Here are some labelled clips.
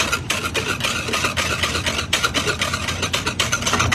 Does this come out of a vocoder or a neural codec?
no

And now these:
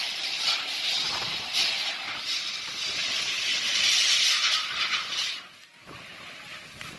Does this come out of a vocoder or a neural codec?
no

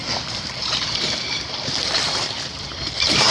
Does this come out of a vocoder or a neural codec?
yes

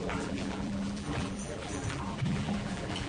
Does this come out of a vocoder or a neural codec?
yes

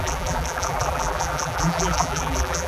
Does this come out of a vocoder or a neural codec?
yes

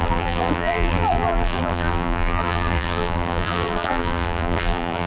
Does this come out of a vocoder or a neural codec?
yes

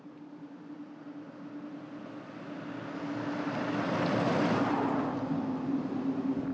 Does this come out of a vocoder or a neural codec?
no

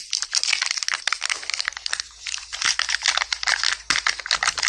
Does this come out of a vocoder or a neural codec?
no